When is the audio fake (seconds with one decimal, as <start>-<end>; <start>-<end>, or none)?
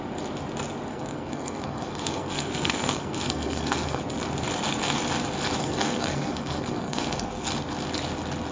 0.9-4.0; 5.6-7.5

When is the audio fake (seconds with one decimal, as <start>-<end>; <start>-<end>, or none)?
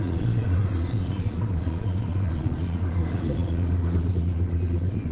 0.0-5.1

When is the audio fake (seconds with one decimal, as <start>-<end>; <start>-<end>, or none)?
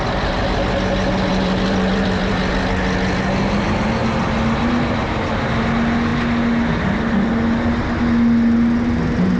1.3-2.5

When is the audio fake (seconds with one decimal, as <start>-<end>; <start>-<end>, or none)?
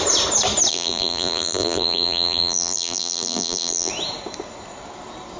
0.7-3.9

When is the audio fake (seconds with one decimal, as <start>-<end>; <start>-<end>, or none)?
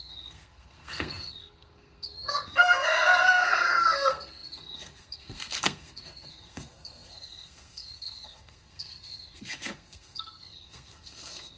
0.0-11.6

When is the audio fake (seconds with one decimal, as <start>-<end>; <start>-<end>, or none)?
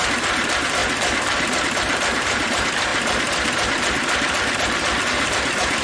0.0-0.8; 1.6-2.9; 5.0-5.8